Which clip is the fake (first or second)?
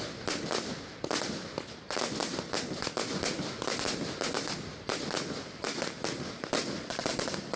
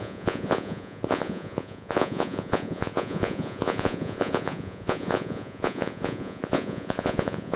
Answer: second